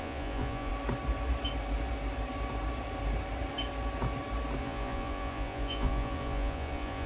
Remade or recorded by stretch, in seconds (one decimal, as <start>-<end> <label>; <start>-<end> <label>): 0.0-0.7 remade; 0.7-4.6 recorded; 4.6-7.1 remade